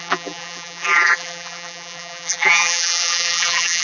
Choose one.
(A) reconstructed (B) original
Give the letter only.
A